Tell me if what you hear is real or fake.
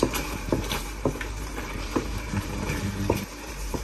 fake